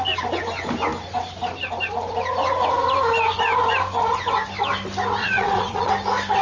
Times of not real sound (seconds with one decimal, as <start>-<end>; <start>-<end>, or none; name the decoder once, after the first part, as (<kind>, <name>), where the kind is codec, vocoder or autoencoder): 5.2-5.9 (vocoder, Vocos)